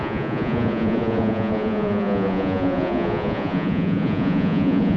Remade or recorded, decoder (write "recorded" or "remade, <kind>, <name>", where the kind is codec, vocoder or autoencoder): remade, vocoder, Vocos